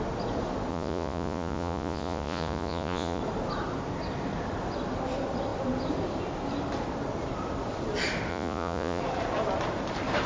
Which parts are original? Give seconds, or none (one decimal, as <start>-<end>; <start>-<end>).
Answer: 0.0-0.7; 3.2-8.3; 9.0-10.3